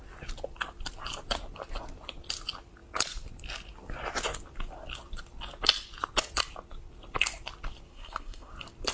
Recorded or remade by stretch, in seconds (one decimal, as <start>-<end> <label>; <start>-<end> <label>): 0.0-7.9 recorded; 7.9-8.5 remade; 8.5-8.9 recorded